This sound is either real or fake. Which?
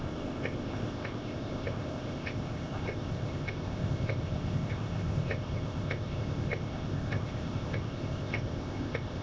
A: fake